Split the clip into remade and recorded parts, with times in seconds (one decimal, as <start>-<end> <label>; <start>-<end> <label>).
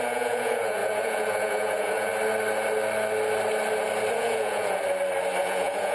0.0-2.1 remade; 2.1-4.1 recorded; 4.1-4.8 remade; 4.8-5.4 recorded; 5.4-5.9 remade